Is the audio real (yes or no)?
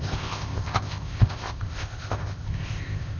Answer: no